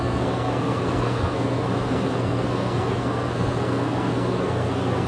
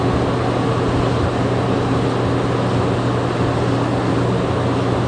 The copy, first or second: first